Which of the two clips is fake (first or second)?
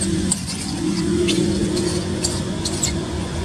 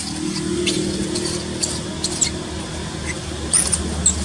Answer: first